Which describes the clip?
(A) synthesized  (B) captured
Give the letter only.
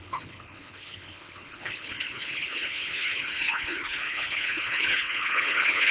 A